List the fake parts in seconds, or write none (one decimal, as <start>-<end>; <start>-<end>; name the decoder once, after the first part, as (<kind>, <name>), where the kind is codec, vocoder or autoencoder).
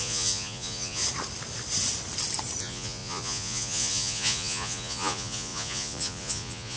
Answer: 0.0-1.0 (vocoder, Vocos); 2.6-6.8